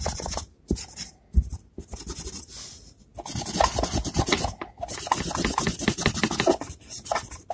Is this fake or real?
real